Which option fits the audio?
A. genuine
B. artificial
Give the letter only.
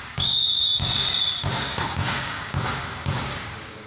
B